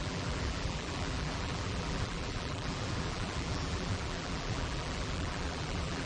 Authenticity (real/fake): fake